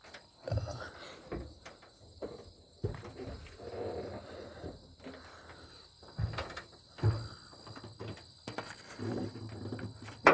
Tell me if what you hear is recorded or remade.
recorded